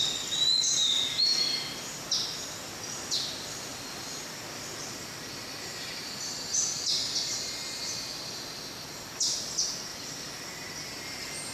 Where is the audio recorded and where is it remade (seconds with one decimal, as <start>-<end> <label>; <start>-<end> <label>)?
0.0-9.9 recorded; 9.9-11.5 remade